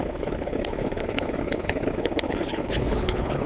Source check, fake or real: fake